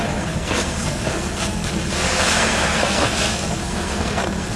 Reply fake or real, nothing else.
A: fake